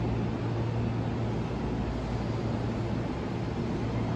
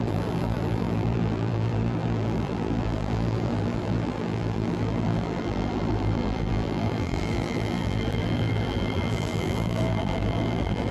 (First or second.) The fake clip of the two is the second